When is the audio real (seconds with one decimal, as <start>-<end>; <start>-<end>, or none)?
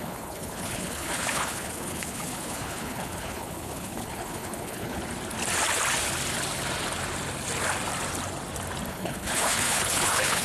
5.0-8.9